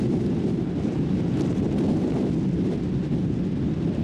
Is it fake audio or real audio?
real